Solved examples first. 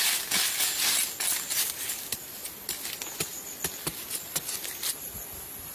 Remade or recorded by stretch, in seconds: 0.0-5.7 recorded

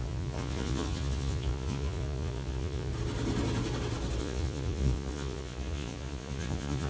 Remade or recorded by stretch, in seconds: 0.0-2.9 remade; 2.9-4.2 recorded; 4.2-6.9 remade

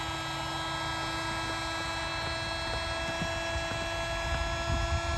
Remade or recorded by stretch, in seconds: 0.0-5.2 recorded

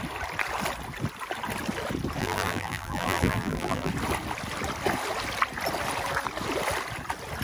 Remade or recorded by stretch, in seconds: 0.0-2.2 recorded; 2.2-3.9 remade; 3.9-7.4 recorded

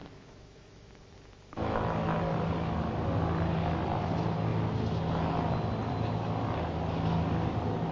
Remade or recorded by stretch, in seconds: 0.0-2.2 remade; 2.2-7.9 recorded

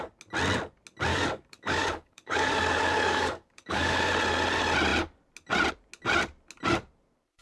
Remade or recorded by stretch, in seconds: 0.0-1.1 recorded; 1.1-4.1 remade; 4.1-7.4 recorded

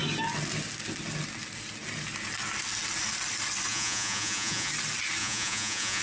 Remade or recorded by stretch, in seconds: 0.0-3.7 recorded; 3.7-4.7 remade; 4.7-5.2 recorded; 5.2-6.0 remade

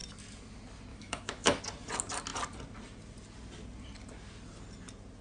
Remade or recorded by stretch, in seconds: 0.0-0.9 recorded; 0.9-1.6 remade; 1.6-5.2 recorded